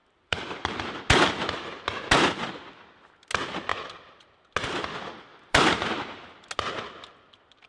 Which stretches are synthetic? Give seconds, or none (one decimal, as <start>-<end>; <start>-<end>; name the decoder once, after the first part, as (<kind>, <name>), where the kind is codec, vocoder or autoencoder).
0.0-0.8 (vocoder, BigVGAN v2); 3.7-4.4; 5.3-6.3